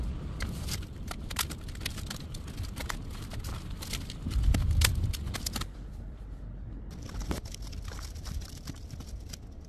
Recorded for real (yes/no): no